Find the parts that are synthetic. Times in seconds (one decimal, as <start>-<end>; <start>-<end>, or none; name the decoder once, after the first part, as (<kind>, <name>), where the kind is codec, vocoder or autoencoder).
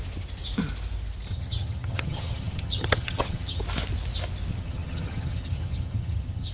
1.3-3.6 (vocoder, HiFi-GAN); 4.5-6.5